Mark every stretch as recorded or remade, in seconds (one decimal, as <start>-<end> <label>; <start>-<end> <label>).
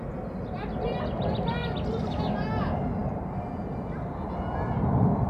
0.0-5.3 recorded